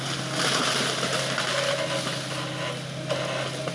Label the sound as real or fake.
real